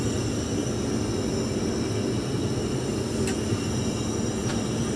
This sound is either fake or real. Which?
real